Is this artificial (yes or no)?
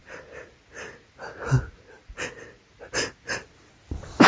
no